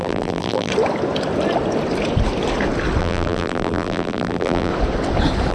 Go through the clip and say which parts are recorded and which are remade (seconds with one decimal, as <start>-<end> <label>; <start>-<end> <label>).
0.0-0.7 remade; 0.7-3.0 recorded; 3.0-4.7 remade; 4.7-5.5 recorded

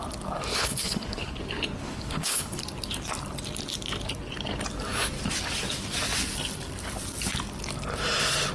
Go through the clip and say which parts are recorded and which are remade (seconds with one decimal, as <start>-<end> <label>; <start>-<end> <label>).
0.0-0.5 recorded; 0.5-1.4 remade; 1.4-1.8 recorded; 1.8-2.6 remade; 2.6-8.5 recorded

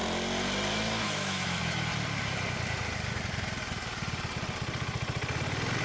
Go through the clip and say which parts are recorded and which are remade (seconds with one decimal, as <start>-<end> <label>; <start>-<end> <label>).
0.0-1.0 recorded; 1.0-1.9 remade; 1.9-5.8 recorded

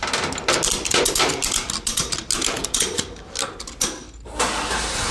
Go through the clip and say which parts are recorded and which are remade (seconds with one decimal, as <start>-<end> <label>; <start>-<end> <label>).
0.0-5.1 recorded

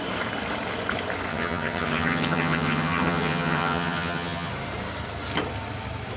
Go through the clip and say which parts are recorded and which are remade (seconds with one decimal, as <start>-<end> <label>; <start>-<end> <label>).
0.0-1.3 recorded; 1.3-4.5 remade; 4.5-6.2 recorded

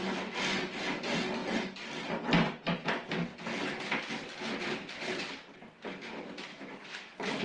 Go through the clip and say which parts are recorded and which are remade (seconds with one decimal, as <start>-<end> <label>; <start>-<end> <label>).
0.0-6.5 recorded; 6.5-7.4 remade

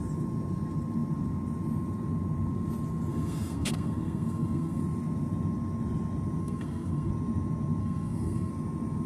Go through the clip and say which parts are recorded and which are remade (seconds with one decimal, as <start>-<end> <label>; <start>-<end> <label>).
0.0-3.1 recorded; 3.1-4.8 remade; 4.8-6.4 recorded; 6.4-7.1 remade; 7.1-7.8 recorded; 7.8-8.5 remade; 8.5-9.1 recorded

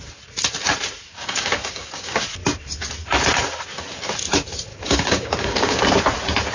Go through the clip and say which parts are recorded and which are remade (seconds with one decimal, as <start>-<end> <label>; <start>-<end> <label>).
0.0-1.1 recorded; 1.1-2.2 remade; 2.2-4.7 recorded; 4.7-5.8 remade; 5.8-6.5 recorded